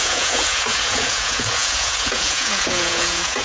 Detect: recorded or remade remade